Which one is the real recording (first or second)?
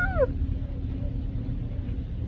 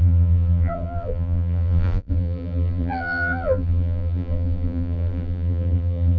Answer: first